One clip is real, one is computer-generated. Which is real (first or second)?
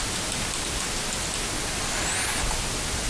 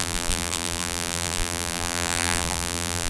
first